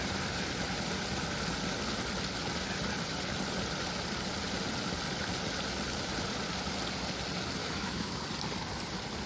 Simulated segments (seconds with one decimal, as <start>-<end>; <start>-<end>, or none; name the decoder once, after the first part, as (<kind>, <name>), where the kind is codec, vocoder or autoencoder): 7.6-8.2 (autoencoder, DAC-VAE)

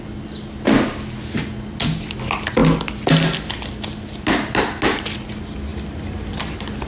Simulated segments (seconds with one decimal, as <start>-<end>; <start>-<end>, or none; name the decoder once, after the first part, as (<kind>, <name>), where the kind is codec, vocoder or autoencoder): none

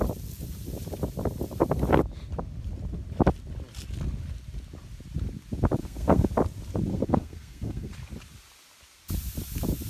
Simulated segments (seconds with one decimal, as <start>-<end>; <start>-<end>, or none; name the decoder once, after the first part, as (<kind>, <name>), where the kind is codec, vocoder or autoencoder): 5.8-6.3 (codec, SNAC); 6.9-7.9